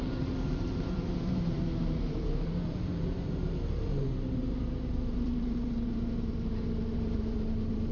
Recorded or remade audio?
remade